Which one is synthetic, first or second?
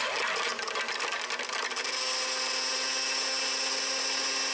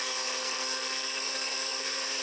second